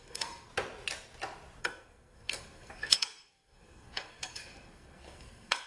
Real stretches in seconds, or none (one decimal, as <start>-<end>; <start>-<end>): 0.5-1.6

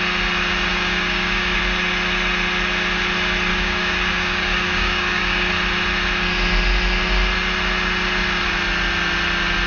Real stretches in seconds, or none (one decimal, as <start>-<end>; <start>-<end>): 0.0-0.7; 1.6-3.5; 5.5-9.7

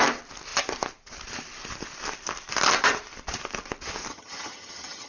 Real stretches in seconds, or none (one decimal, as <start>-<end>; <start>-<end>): 0.0-4.1

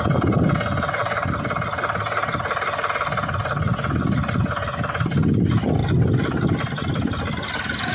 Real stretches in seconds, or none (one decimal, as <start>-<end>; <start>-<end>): 0.0-7.9

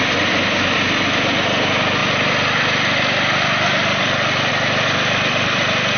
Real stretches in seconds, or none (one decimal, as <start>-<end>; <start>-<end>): 0.0-6.0

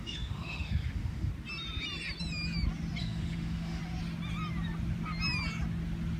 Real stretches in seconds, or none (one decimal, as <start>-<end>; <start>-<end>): 1.3-3.0; 3.8-6.2

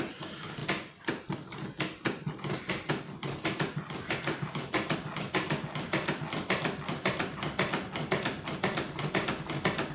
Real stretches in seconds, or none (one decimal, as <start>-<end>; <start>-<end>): 0.0-9.9